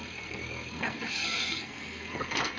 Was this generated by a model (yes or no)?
yes